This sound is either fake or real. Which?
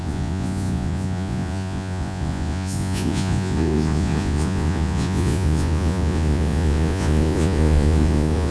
fake